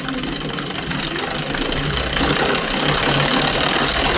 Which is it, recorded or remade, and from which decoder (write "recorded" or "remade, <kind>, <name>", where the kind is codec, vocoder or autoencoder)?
recorded